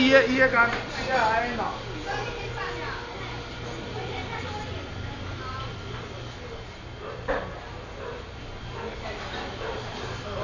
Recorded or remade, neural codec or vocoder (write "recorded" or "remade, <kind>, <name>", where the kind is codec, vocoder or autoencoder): recorded